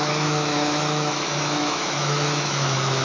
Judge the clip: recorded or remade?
remade